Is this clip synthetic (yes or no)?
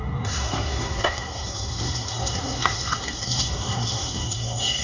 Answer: yes